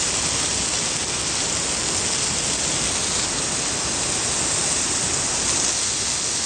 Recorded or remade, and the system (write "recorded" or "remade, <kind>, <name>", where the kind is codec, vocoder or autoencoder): recorded